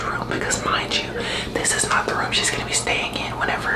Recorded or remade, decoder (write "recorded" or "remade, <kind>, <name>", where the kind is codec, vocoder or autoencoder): recorded